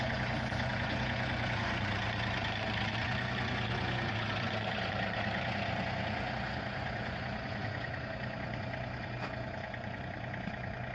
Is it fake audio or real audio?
fake